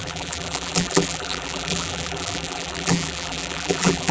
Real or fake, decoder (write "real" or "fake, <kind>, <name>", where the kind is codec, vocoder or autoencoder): fake, vocoder, BigVGAN v2